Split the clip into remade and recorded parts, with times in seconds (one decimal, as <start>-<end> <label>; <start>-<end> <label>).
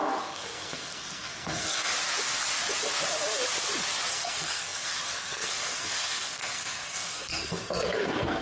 0.0-1.9 remade; 1.9-4.1 recorded; 4.1-8.4 remade